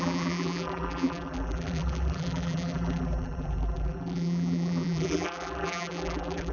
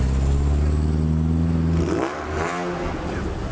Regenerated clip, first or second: first